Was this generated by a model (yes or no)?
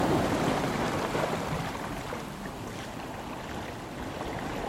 no